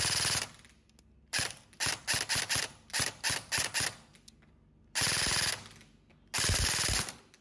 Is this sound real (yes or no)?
yes